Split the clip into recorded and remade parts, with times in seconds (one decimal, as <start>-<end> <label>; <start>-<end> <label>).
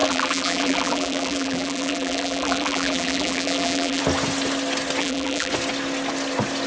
0.0-4.0 remade; 4.0-5.0 recorded; 5.0-5.5 remade; 5.5-6.7 recorded